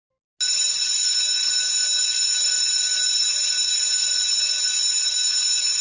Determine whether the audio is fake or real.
real